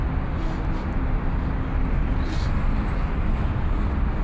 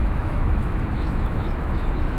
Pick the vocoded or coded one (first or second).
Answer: second